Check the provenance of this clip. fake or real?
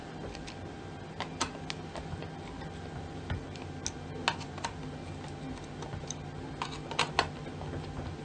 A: real